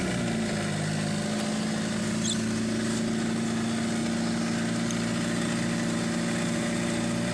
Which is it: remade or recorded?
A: recorded